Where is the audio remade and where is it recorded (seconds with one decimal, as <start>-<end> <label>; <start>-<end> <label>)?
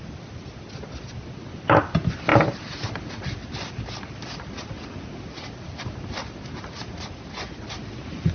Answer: 0.0-8.3 recorded